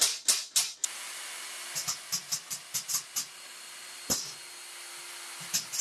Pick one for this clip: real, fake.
real